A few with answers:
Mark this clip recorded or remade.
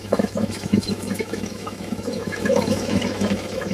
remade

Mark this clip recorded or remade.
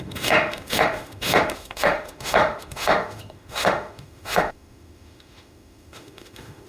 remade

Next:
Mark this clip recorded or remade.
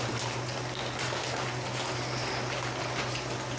recorded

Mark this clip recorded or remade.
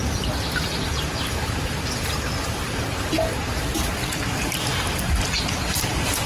recorded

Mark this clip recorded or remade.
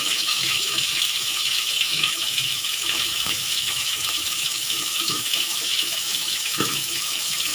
remade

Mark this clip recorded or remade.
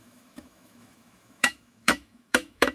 remade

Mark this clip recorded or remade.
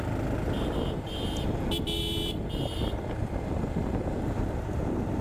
recorded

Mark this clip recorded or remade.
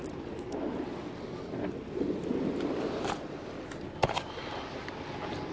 recorded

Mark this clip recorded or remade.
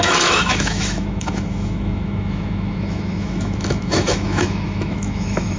remade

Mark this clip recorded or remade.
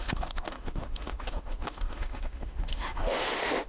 remade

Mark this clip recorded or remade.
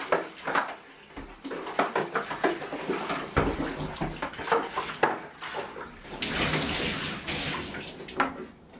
recorded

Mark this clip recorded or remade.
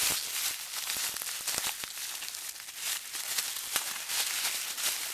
recorded